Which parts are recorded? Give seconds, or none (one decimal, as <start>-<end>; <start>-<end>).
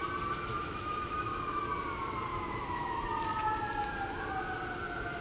0.0-0.5; 1.6-2.3; 3.0-5.2